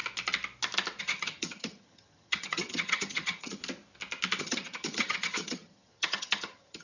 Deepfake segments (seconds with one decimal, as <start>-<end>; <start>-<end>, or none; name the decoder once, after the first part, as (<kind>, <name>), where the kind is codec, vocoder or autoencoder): 1.0-3.6 (vocoder, HiFi-GAN); 4.4-6.8